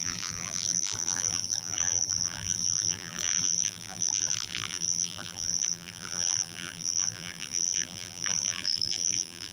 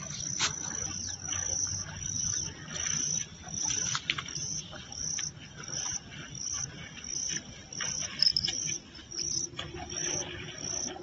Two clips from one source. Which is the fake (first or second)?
first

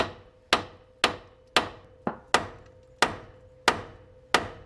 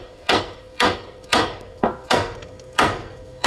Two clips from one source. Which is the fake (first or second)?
second